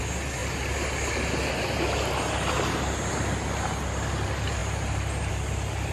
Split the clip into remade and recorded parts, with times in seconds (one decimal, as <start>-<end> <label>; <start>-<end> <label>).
0.0-5.9 recorded